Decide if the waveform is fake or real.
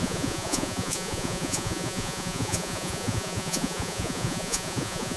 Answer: fake